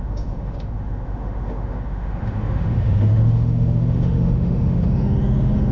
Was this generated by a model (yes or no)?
yes